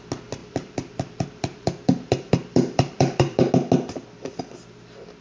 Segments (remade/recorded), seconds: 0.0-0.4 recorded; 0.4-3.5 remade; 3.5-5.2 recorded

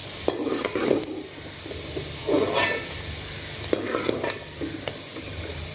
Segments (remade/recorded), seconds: 0.0-5.7 recorded